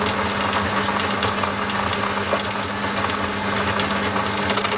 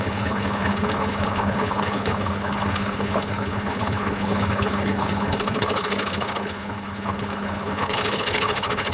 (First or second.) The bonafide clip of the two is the first